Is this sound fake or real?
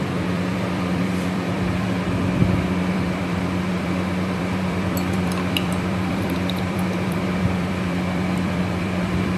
fake